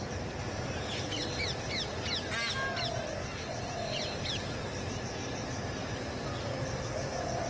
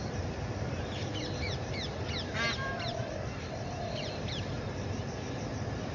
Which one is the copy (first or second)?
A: second